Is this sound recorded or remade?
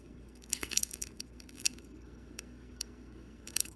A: remade